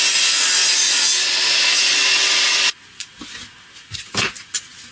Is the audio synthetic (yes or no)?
no